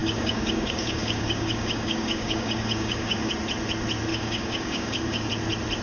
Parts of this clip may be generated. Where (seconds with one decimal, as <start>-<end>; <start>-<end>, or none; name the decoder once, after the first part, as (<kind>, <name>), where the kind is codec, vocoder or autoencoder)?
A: 0.0-3.3 (codec, DAC); 4.1-5.3